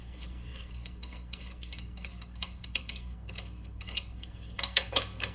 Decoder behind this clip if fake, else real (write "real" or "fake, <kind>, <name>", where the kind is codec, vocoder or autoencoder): fake, codec, SNAC